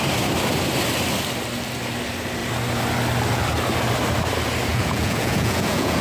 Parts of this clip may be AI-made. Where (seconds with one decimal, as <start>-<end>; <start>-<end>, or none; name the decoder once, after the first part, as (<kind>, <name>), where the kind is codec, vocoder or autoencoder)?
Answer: 4.7-6.0 (vocoder, Vocos)